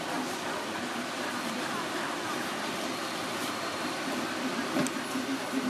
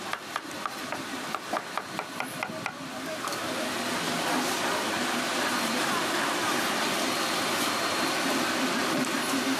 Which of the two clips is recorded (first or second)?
second